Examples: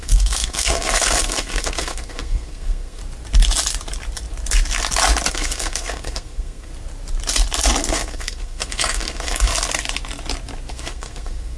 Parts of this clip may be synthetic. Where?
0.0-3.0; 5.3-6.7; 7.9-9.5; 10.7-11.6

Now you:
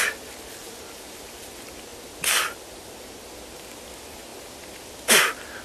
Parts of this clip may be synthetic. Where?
4.3-4.9

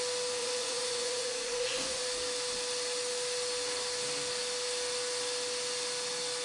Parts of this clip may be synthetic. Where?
0.4-2.0

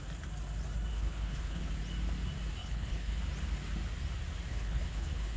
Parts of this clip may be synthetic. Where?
0.9-1.7; 2.6-3.2; 4.5-5.4

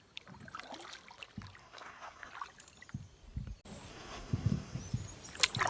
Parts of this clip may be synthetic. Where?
1.6-2.3; 3.9-4.8

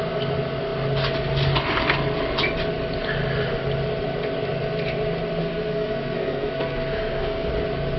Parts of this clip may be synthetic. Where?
5.4-7.5